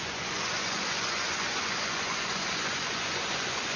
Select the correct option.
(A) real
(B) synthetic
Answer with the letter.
B